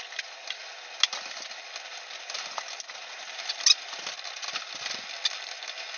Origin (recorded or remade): recorded